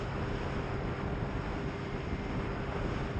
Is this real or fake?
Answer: real